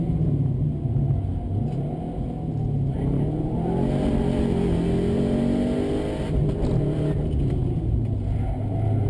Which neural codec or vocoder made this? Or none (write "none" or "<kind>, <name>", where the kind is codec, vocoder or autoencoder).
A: none